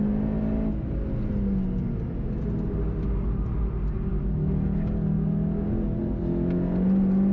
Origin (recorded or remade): recorded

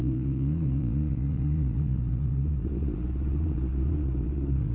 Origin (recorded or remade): remade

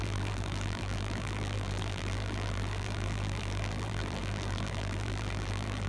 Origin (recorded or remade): remade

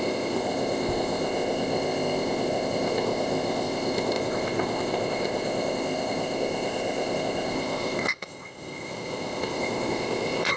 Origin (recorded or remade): remade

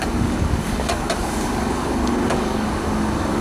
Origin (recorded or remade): remade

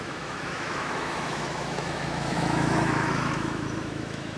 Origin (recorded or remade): remade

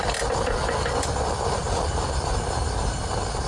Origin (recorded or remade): recorded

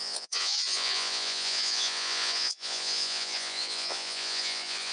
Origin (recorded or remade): remade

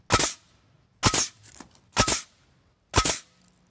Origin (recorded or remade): recorded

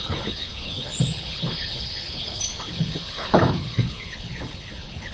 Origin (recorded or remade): remade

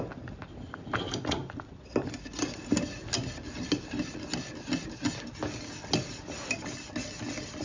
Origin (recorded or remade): recorded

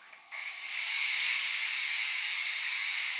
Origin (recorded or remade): remade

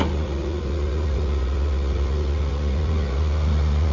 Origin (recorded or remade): remade